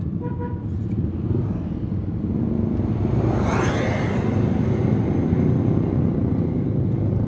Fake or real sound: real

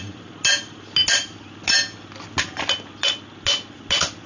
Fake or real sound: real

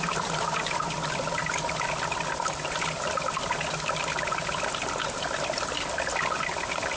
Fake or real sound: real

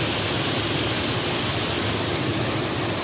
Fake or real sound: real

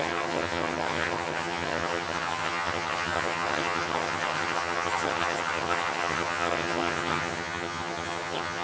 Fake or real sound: fake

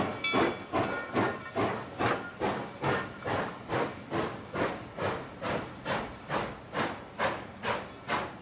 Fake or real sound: real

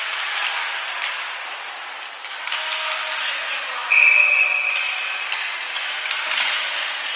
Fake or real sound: real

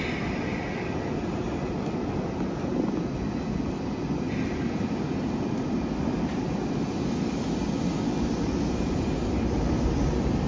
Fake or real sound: real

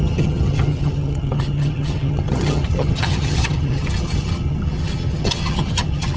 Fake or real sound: fake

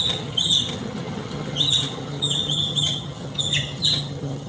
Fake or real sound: fake